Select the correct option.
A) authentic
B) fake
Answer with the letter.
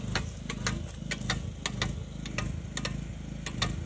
A